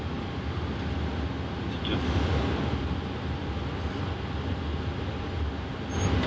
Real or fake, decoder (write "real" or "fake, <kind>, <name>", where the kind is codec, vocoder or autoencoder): real